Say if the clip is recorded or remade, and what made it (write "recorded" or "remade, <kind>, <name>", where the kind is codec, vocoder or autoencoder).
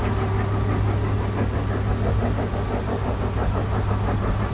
recorded